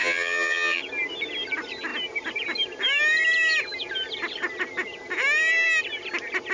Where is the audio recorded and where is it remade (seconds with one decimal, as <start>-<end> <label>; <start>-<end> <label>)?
0.0-0.8 remade; 0.8-6.5 recorded